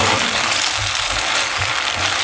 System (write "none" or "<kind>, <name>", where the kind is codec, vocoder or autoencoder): vocoder, BigVGAN v2